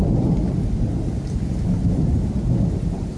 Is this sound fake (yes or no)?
no